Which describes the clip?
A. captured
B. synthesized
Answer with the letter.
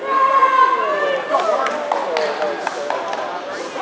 A